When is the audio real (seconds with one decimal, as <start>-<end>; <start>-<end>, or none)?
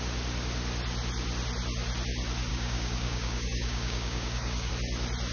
0.0-2.5; 4.7-5.3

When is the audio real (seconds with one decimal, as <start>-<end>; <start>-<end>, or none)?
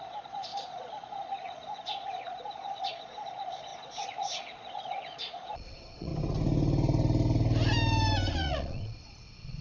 6.1-8.3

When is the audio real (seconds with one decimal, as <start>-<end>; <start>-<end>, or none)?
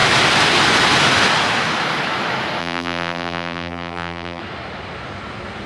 0.0-2.6; 4.4-5.7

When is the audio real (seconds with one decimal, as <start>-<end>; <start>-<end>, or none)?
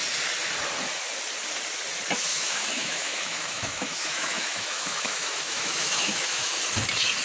0.0-2.3; 6.6-7.2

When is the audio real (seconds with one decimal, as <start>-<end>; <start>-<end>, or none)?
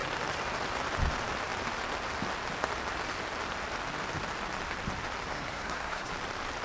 0.0-5.3; 6.1-6.6